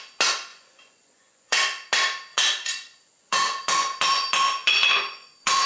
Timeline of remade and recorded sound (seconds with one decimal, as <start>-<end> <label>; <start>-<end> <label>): 0.0-0.5 recorded; 0.5-1.9 remade; 1.9-2.3 recorded; 2.3-5.7 remade